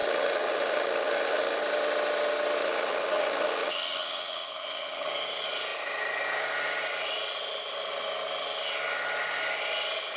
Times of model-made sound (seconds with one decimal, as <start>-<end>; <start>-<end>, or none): 0.0-1.6; 2.6-5.1